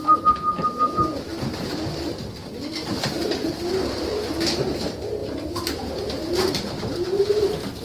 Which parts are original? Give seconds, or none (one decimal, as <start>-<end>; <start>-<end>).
0.0-1.3; 1.9-2.4; 3.5-7.8